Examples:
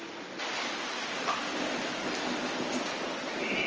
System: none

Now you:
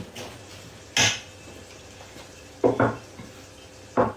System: none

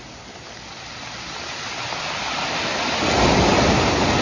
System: none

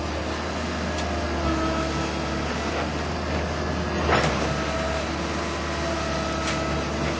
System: none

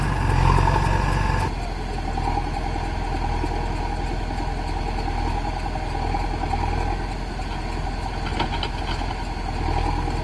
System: none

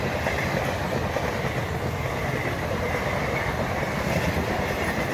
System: none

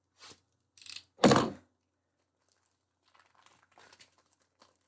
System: none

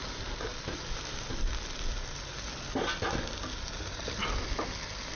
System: none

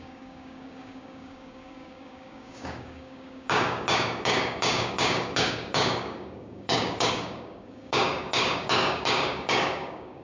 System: codec, DAC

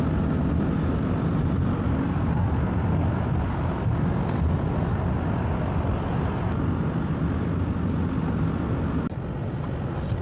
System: none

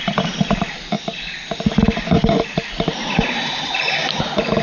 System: none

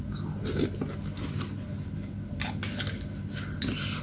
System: none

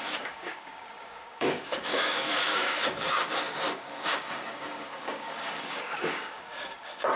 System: codec, DAC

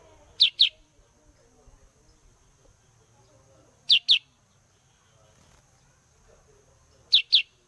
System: none